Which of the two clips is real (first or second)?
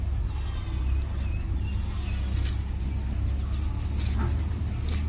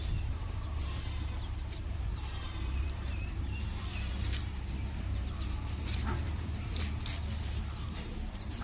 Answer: first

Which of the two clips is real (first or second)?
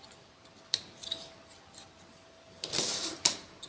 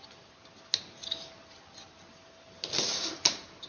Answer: second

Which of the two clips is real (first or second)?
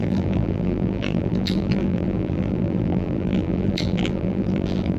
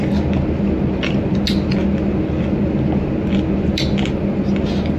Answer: second